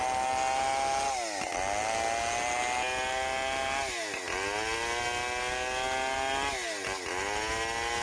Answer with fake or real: real